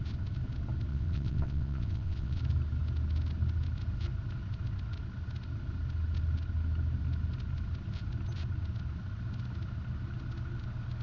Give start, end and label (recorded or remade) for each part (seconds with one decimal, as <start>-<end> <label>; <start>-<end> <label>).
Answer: 0.0-0.9 recorded; 0.9-2.4 remade; 2.4-11.0 recorded